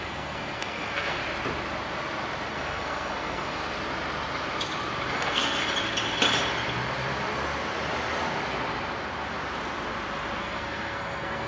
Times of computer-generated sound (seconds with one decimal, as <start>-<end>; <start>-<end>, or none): 0.0-1.2; 2.5-3.6; 5.1-5.6; 10.4-11.5